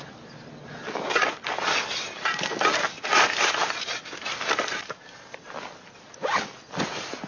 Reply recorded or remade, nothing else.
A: recorded